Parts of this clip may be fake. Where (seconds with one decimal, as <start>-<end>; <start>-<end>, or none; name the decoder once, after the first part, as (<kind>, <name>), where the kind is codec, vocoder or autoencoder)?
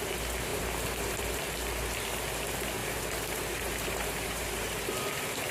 0.5-1.2 (vocoder, BigVGAN v2); 2.8-5.5